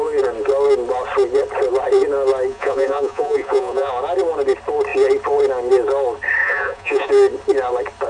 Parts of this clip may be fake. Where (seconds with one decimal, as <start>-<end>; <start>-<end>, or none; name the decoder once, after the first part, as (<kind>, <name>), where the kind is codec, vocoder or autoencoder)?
2.5-3.9 (vocoder, Vocos); 6.4-7.1